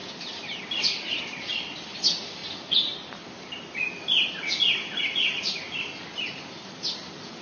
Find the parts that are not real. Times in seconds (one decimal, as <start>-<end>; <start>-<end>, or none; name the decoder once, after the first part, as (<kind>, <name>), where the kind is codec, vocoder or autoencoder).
none